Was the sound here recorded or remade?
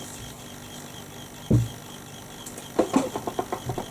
recorded